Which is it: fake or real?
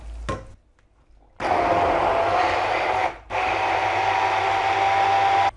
real